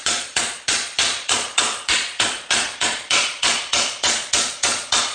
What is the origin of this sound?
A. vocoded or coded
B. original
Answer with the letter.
A